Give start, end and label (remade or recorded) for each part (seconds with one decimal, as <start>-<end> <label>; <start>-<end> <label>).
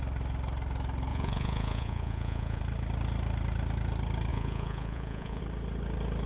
0.0-1.1 recorded; 1.1-2.6 remade; 2.6-4.3 recorded; 4.3-5.4 remade; 5.4-6.3 recorded